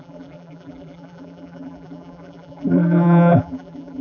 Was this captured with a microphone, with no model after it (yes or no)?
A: no